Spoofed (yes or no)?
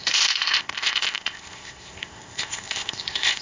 yes